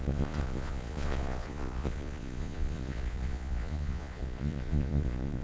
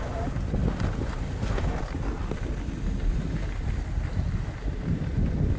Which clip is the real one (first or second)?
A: second